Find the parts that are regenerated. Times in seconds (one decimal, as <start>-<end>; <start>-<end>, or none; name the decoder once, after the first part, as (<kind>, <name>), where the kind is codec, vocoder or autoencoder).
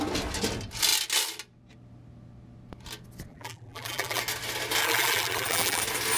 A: 3.3-4.2 (vocoder, BigVGAN v2); 4.8-5.8